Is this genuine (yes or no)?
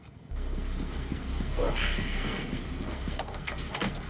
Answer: no